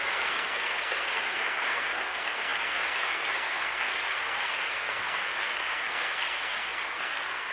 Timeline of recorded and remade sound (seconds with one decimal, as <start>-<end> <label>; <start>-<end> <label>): 0.0-7.5 remade